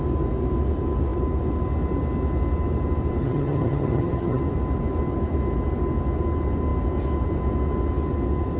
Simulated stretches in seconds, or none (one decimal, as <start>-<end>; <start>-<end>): 3.2-4.4